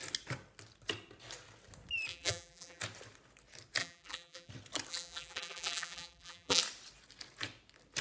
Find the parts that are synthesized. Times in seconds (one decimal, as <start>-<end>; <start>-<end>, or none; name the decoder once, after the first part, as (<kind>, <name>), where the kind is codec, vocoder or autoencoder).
2.1-2.8 (vocoder, BigVGAN v2); 3.8-4.5; 4.9-6.6

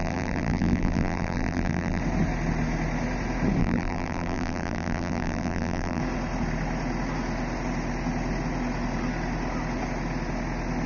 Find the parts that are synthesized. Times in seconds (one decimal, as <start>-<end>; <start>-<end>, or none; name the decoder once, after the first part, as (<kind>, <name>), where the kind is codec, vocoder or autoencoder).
0.0-2.0 (vocoder, BigVGAN v2); 3.6-6.0